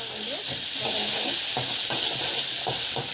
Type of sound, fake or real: real